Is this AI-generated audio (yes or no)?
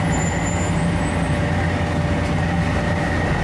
no